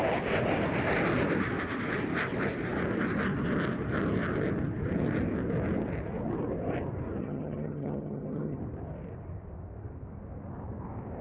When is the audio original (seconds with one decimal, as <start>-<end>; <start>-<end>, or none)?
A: 0.0-7.2; 8.6-11.2